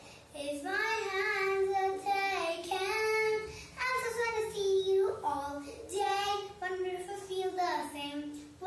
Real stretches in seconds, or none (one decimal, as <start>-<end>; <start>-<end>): 0.0-4.2; 5.4-8.7